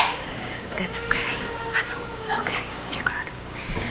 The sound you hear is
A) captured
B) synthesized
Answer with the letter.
B